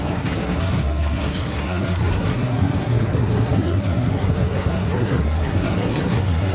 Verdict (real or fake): fake